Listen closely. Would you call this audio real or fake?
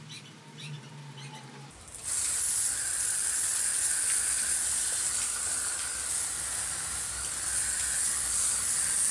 real